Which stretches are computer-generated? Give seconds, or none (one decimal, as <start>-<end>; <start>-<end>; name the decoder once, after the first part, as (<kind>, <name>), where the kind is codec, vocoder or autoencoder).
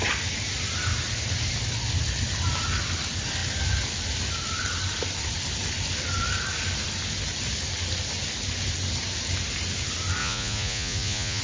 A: 10.2-11.4 (vocoder, Vocos)